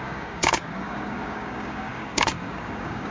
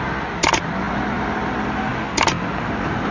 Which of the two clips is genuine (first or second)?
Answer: second